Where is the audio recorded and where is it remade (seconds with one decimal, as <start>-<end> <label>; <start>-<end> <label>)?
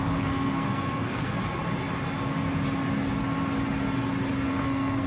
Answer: 0.0-1.4 remade; 1.4-4.5 recorded; 4.5-5.1 remade